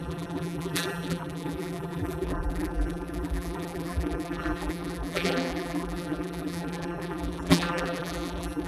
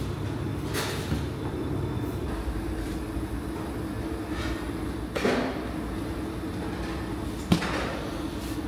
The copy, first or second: first